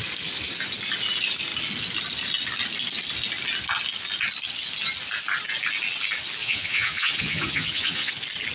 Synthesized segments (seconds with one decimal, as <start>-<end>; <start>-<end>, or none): 6.4-8.1